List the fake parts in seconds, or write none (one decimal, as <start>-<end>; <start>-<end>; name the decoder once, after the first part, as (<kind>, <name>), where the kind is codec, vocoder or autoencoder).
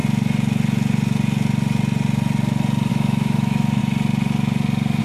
2.9-3.8 (autoencoder, DAC-VAE)